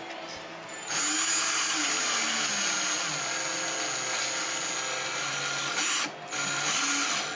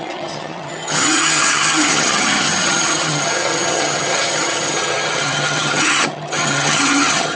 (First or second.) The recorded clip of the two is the first